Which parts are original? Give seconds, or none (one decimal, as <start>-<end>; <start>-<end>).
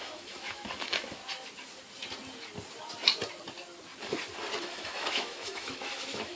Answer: 1.2-4.6